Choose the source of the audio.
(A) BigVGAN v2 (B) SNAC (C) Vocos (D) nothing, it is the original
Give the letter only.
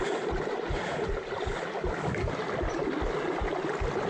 D